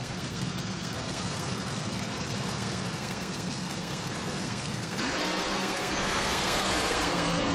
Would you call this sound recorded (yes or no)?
no